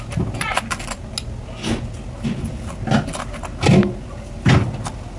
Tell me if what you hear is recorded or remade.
recorded